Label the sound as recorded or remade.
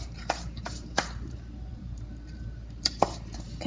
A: remade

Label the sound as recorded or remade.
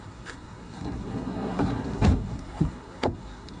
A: remade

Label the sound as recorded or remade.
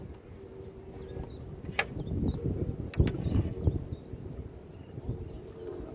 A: recorded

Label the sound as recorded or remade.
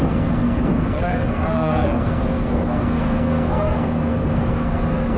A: remade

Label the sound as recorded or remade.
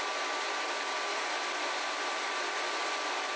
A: recorded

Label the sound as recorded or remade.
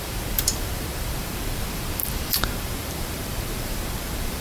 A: remade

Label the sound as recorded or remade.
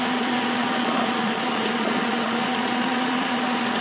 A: remade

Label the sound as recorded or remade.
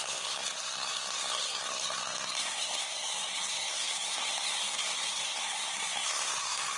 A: remade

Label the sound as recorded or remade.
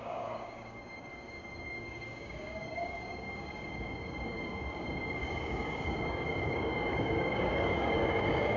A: remade